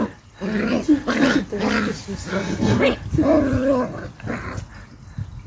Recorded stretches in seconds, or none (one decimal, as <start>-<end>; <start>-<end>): 0.0-2.3; 2.8-5.5